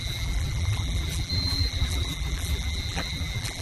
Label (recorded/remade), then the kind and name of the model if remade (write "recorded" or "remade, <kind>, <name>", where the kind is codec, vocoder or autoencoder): remade, vocoder, BigVGAN v2